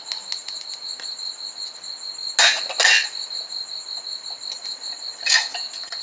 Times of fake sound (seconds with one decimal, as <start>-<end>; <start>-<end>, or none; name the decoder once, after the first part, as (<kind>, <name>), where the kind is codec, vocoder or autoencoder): none